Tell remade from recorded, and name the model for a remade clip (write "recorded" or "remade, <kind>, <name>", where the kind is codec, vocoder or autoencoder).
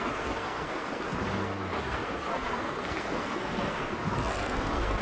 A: remade, codec, SNAC